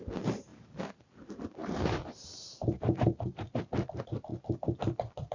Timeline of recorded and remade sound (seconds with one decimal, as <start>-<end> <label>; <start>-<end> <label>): 0.0-0.5 recorded; 0.5-1.1 remade; 1.1-1.6 recorded; 1.6-3.6 remade; 3.6-5.3 recorded